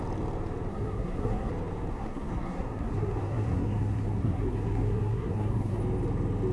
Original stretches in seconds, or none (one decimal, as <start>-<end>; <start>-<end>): 0.0-0.7; 1.5-1.9; 5.8-6.5

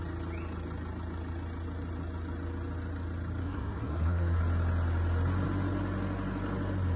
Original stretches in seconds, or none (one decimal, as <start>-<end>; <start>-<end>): 0.0-3.4; 4.4-7.0

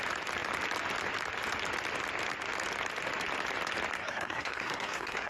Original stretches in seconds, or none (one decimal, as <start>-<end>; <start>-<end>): 0.0-4.0

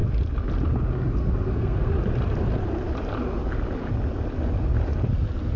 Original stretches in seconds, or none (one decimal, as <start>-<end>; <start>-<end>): 0.0-1.2; 1.9-5.6

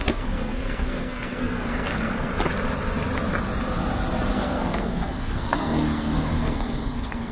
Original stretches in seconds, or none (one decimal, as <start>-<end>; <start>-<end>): 2.3-4.3

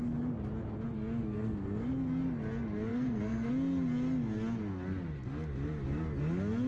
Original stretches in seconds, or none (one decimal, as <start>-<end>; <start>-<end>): 0.0-1.2; 1.9-2.9; 3.5-6.7

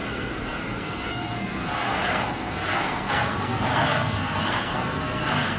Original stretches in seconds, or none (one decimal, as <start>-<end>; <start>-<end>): none